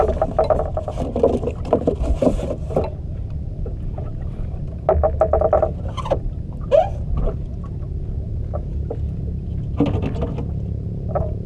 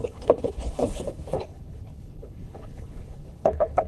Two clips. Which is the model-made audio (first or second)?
second